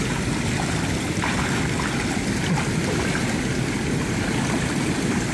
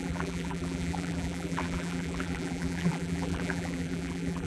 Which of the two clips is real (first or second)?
first